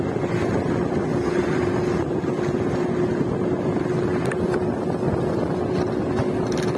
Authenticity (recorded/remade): recorded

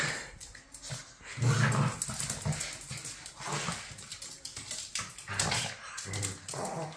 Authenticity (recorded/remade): recorded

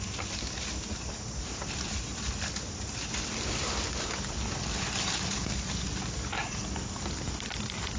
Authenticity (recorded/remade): recorded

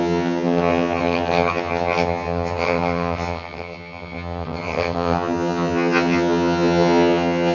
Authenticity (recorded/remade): remade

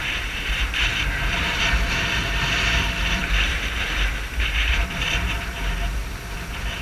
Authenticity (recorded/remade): remade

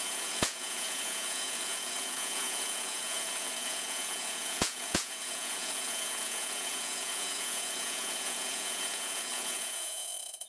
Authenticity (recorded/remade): remade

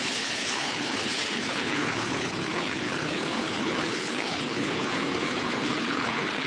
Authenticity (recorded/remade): remade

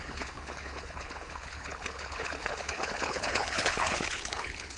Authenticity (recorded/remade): remade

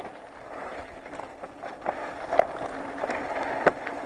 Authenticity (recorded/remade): remade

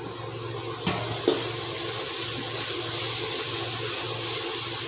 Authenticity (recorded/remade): recorded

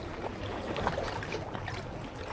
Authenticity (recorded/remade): recorded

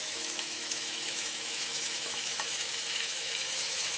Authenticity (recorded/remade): remade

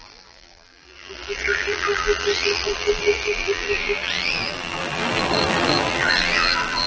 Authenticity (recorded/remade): remade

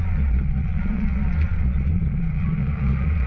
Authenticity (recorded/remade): remade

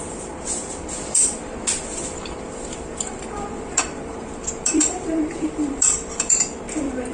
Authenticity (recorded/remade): remade